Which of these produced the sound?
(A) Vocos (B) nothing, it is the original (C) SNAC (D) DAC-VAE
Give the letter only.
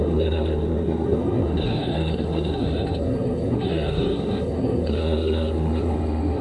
C